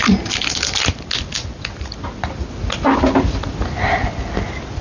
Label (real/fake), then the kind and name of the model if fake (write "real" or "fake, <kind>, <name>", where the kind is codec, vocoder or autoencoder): real